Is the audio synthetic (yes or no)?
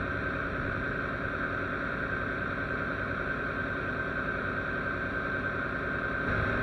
no